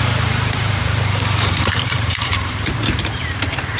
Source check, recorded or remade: remade